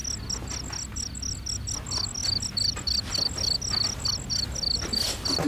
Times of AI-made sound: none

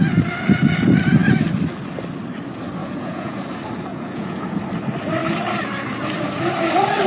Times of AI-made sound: 2.8-3.4 (vocoder, Vocos); 3.9-4.6

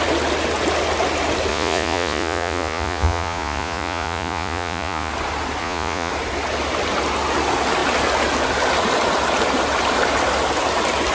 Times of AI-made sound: 1.5-5.1 (vocoder, Vocos); 5.6-6.1

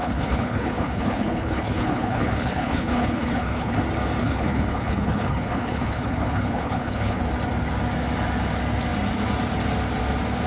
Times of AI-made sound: 0.0-3.8 (codec, HILCodec); 4.2-7.2

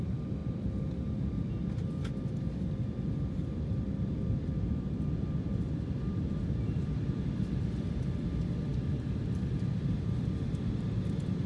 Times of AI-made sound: 0.0-11.5 (vocoder, BigVGAN v2)

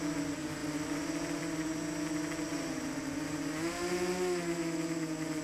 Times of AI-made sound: 0.6-1.4 (vocoder, BigVGAN v2); 2.5-3.4